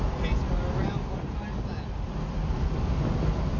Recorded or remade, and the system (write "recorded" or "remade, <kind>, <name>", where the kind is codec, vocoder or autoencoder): recorded